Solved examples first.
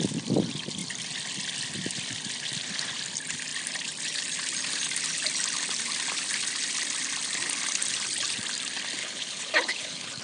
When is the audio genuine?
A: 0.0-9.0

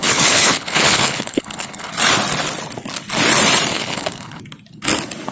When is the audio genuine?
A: 1.9-3.7; 4.4-5.3